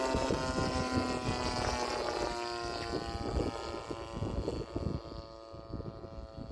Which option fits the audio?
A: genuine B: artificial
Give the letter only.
A